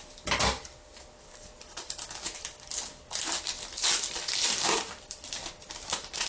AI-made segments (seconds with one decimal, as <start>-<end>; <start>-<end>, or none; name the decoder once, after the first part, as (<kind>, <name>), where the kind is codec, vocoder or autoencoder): none

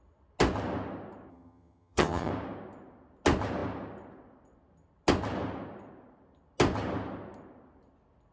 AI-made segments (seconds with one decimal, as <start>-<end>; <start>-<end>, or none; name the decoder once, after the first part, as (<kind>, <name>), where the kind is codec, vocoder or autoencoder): 1.3-2.3 (vocoder, HiFi-GAN)

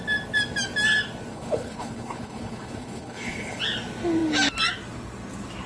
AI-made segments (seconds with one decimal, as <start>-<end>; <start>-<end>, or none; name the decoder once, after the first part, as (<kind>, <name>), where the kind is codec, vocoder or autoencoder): 1.3-3.6 (codec, HILCodec)

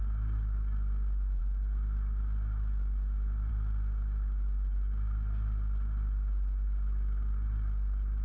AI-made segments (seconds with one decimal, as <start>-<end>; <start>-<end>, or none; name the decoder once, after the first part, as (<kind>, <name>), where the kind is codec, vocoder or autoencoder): none

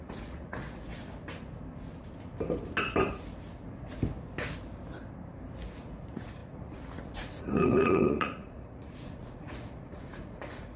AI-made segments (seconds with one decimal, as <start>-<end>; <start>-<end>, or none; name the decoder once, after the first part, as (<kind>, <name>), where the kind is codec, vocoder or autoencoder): 0.0-0.9 (vocoder, Vocos); 5.7-10.8

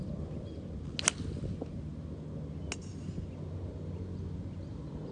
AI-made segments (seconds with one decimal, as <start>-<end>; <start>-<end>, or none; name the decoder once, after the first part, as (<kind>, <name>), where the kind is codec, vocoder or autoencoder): none

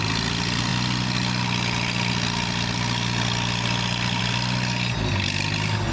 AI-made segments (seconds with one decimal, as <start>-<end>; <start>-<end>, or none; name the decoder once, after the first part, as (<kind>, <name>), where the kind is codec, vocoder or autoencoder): none